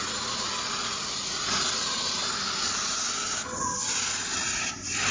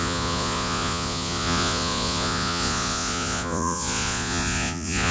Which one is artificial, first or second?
second